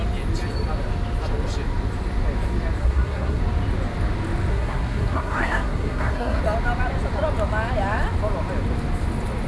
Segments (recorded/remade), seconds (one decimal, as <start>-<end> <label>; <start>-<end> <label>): 0.0-2.8 recorded; 2.8-3.4 remade; 3.4-4.5 recorded; 4.5-6.4 remade; 6.4-9.5 recorded